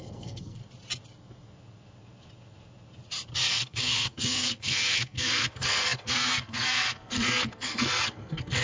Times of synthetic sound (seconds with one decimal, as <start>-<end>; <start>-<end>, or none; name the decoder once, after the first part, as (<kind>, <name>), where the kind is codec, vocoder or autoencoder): 0.0-0.6 (codec, SNAC); 3.5-8.6